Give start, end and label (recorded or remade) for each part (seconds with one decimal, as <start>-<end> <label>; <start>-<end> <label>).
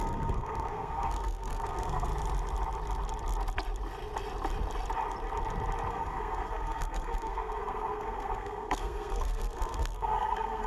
0.0-2.1 remade; 2.1-5.9 recorded; 5.9-10.7 remade